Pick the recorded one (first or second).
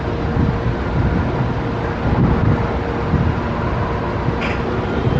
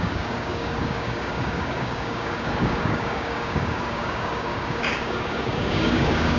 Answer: first